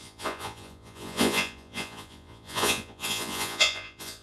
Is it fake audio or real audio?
fake